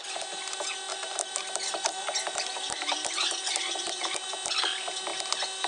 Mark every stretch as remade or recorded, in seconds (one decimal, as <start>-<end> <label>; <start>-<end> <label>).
0.0-0.9 recorded; 0.9-4.3 remade; 4.3-5.7 recorded